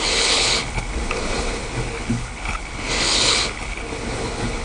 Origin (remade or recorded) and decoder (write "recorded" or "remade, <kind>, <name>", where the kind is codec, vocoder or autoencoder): remade, codec, HILCodec